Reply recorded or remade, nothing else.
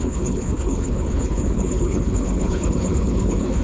remade